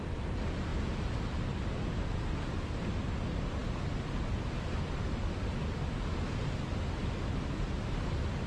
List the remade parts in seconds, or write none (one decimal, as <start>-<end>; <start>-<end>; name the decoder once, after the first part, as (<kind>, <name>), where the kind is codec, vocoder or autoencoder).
none